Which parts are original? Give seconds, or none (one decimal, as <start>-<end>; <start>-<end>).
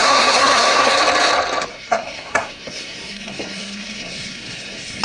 1.0-1.7